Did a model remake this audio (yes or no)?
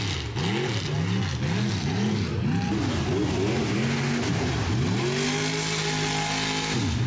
no